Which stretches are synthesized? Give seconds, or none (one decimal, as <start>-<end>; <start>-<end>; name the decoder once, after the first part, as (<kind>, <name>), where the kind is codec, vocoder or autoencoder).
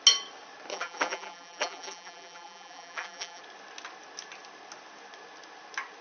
0.7-3.4 (vocoder, BigVGAN v2)